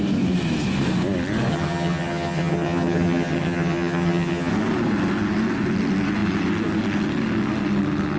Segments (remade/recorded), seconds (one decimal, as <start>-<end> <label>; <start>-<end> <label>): 0.0-1.5 recorded; 1.5-4.5 remade; 4.5-8.2 recorded